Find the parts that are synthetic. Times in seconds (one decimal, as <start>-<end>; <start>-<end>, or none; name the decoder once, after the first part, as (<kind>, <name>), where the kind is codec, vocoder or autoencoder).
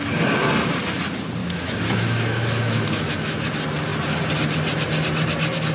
1.4-3.5 (autoencoder, DAC-VAE)